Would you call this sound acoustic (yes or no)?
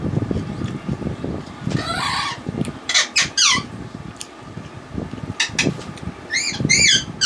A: yes